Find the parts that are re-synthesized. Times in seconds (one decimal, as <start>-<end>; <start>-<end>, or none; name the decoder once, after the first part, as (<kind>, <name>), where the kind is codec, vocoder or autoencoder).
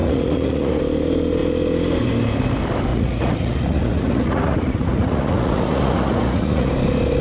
0.0-0.8 (vocoder, Vocos); 2.9-6.7